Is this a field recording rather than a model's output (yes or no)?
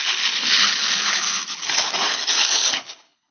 no